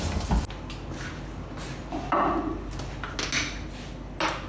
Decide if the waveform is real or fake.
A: real